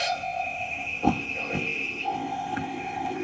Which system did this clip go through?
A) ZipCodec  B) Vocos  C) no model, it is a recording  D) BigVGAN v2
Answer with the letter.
A